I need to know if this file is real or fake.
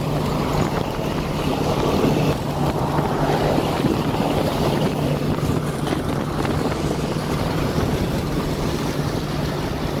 fake